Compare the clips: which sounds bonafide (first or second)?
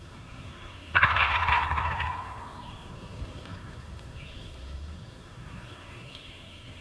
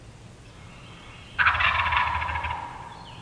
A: second